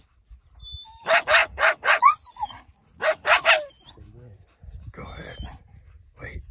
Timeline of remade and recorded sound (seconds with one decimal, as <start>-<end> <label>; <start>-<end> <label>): 0.0-1.4 recorded; 1.4-3.5 remade; 3.5-6.5 recorded